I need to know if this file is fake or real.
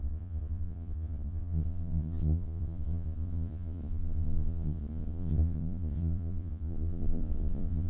fake